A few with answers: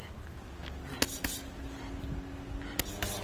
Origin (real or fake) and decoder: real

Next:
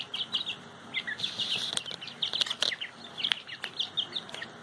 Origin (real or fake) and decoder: real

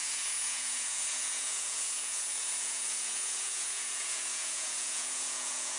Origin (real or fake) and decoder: fake, vocoder, Vocos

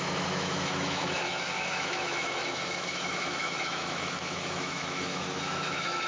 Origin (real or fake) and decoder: fake, autoencoder, DAC-VAE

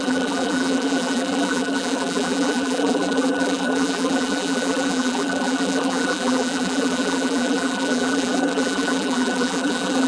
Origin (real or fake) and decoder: fake, vocoder, BigVGAN v2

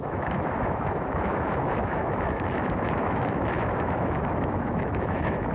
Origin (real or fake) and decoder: fake, autoencoder, DAC-VAE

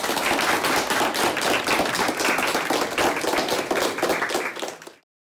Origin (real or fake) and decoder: real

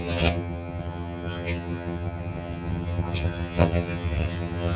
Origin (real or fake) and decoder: fake, vocoder, HiFi-GAN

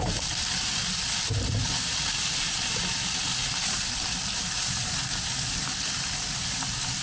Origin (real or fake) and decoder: real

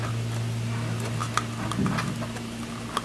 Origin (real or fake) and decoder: real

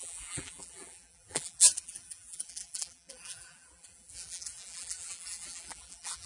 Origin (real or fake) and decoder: fake, vocoder, BigVGAN v2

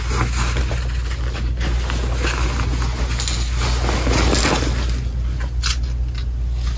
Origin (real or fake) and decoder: real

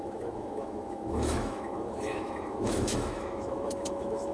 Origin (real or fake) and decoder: fake, autoencoder, DAC-VAE